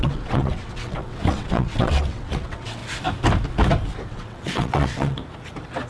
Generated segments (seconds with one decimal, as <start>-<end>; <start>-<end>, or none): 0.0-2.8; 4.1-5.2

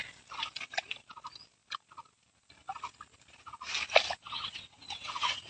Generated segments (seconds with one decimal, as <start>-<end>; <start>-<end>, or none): 4.2-5.5

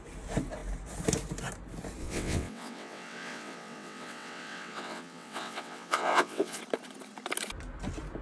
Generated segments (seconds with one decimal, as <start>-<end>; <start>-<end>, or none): 2.0-6.6

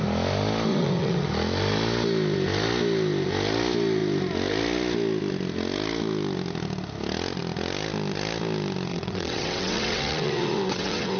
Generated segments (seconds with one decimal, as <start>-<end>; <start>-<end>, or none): 0.7-1.3; 8.9-11.2